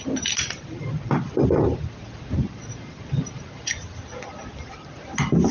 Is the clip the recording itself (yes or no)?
yes